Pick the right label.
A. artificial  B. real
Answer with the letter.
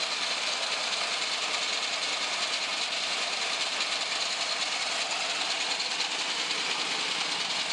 B